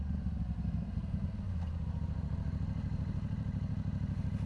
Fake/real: fake